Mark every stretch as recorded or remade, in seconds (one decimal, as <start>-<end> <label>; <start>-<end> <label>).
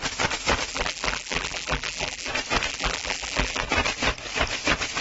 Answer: 0.0-0.7 recorded; 0.7-2.3 remade; 2.3-2.7 recorded; 2.7-3.6 remade; 3.6-5.0 recorded